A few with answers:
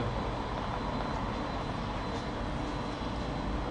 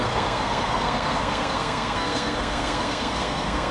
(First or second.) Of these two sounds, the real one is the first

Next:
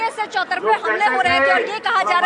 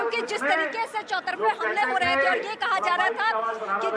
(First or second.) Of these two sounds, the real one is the first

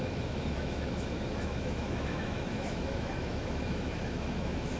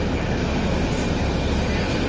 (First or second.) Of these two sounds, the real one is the second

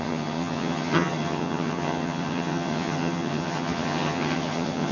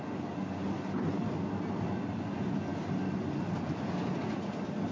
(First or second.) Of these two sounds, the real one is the second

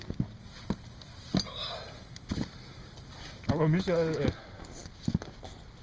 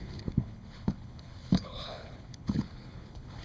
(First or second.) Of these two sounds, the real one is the first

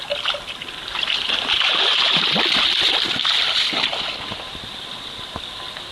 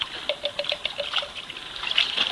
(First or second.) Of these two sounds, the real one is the first